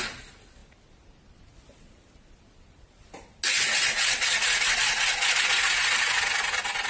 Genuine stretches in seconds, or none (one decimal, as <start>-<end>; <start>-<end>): 0.0-6.9